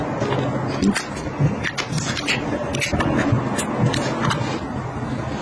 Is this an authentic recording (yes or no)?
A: yes